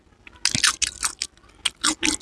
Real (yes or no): yes